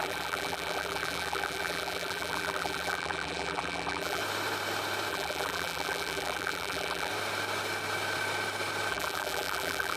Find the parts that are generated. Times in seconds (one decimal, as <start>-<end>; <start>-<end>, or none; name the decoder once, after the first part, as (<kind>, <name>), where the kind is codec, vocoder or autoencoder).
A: 0.0-4.2 (vocoder, BigVGAN v2); 5.1-7.1; 8.9-10.0